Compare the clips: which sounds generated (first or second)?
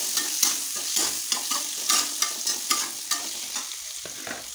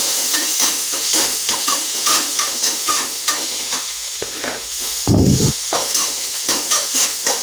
second